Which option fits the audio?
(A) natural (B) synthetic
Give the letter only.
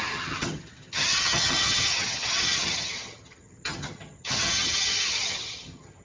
B